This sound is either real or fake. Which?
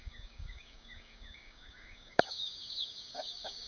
fake